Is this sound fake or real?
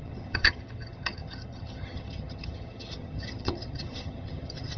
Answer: fake